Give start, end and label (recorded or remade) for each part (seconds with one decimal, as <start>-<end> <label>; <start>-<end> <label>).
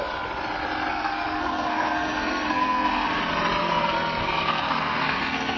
0.0-0.9 recorded; 0.9-3.2 remade; 3.2-3.6 recorded; 3.6-5.6 remade